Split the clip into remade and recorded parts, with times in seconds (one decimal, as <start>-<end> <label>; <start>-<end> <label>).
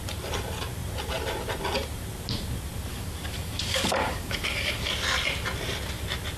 0.0-2.9 recorded; 2.9-4.9 remade; 4.9-6.4 recorded